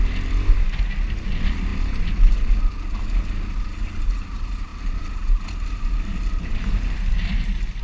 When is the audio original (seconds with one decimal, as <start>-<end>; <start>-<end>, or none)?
0.0-7.8